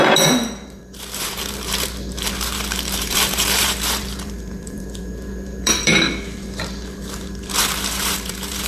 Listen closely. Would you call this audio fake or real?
fake